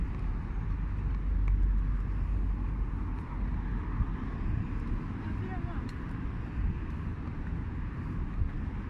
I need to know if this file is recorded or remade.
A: recorded